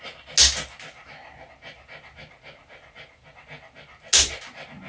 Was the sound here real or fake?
real